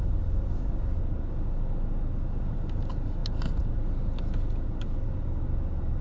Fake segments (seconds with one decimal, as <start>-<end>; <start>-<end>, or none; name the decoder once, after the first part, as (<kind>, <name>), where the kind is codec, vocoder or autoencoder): none